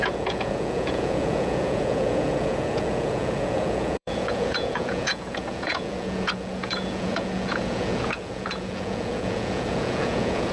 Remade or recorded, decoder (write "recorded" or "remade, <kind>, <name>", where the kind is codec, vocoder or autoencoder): remade, vocoder, Vocos